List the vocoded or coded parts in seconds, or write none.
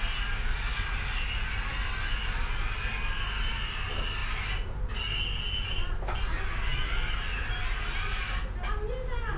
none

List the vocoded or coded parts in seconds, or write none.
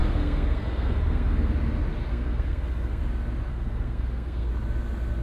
0.0-1.5; 2.1-3.0; 3.5-4.5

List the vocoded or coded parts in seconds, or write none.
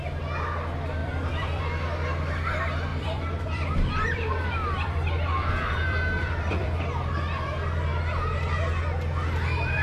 1.0-1.6; 2.9-6.8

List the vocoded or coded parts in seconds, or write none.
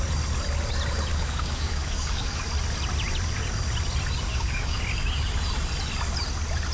1.1-2.4; 4.3-4.8